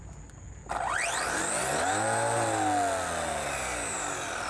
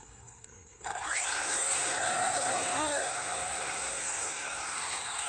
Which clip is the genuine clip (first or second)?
first